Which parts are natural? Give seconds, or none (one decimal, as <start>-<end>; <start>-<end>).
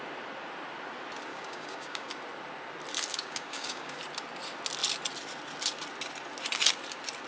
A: 0.0-1.3; 2.1-3.1; 4.0-7.3